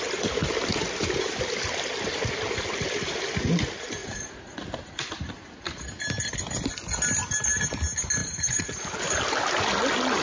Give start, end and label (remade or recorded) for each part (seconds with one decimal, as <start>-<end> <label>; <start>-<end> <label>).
0.0-4.0 recorded; 4.0-4.6 remade; 4.6-8.2 recorded; 8.2-8.8 remade; 8.8-10.2 recorded